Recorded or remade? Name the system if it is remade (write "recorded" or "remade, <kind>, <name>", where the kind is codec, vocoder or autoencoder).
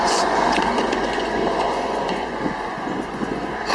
remade, vocoder, Vocos